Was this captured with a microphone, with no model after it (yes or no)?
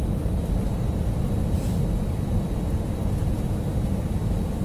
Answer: yes